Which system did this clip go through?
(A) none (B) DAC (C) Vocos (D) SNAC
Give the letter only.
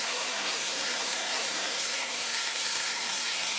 D